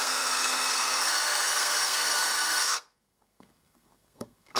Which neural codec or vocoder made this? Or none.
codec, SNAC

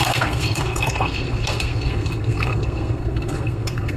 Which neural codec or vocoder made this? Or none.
codec, SNAC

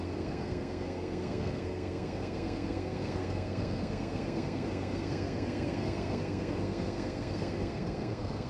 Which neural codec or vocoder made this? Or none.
codec, SNAC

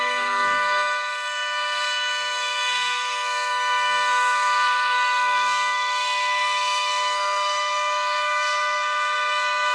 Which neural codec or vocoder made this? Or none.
codec, SNAC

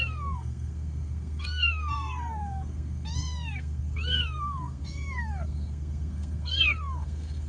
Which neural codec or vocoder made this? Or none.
codec, SNAC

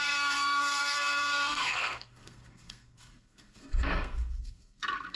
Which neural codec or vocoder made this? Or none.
codec, SNAC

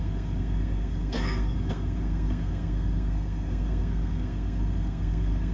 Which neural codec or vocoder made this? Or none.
codec, SNAC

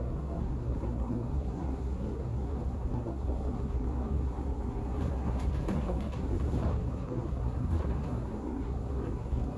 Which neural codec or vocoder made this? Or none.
codec, SNAC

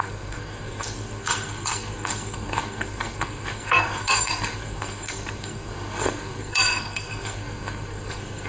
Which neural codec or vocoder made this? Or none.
codec, SNAC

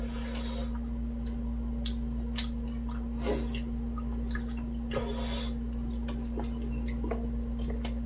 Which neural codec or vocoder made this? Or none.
none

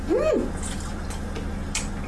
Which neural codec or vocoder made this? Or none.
none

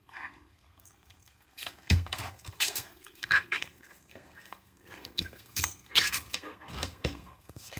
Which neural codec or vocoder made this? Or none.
codec, SNAC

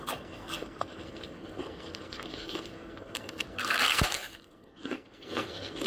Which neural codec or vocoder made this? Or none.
codec, SNAC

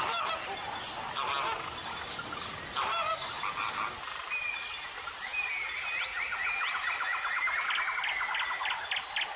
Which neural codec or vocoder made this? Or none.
none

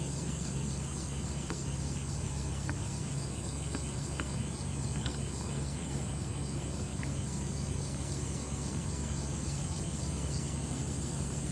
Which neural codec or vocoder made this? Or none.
codec, SNAC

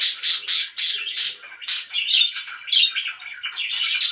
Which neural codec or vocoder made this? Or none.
none